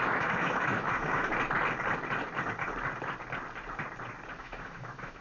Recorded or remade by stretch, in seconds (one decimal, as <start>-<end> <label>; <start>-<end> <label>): 0.0-1.3 remade; 1.3-4.4 recorded; 4.4-5.2 remade